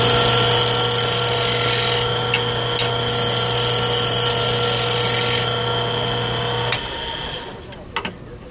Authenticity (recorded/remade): recorded